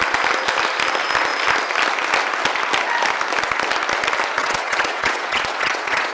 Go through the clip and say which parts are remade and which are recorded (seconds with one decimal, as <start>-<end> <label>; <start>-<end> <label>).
0.0-4.4 recorded; 4.4-6.1 remade